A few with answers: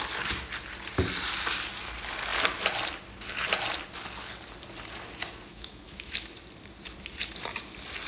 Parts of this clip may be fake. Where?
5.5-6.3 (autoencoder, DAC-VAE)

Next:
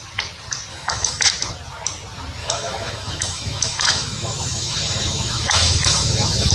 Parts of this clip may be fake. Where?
0.7-1.3 (autoencoder, DAC-VAE); 2.4-6.5

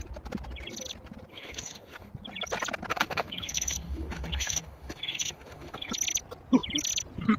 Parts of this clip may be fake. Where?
1.3-2.1 (autoencoder, DAC-VAE); 2.9-5.9

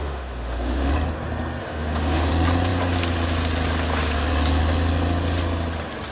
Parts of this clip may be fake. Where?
0.0-0.9 (autoencoder, DAC-VAE); 1.6-2.3

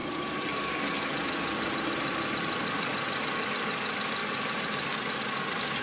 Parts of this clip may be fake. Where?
none

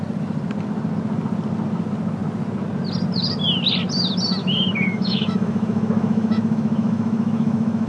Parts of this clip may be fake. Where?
4.4-7.9 (autoencoder, DAC-VAE)